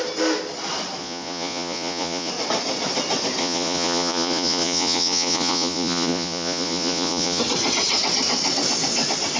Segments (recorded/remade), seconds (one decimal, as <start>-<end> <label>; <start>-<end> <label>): 0.0-1.0 recorded; 1.0-2.3 remade; 2.3-3.4 recorded; 3.4-7.4 remade; 7.4-9.4 recorded

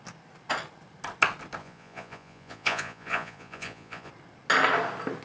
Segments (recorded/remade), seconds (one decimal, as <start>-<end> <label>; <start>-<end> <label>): 0.0-1.6 recorded; 1.6-4.1 remade; 4.1-5.2 recorded

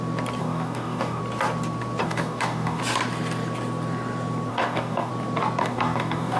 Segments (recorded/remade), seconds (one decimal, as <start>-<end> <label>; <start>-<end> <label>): 0.0-0.4 recorded; 0.4-1.2 remade; 1.2-2.0 recorded; 2.0-2.8 remade; 2.8-4.5 recorded; 4.5-5.1 remade; 5.1-5.6 recorded; 5.6-6.4 remade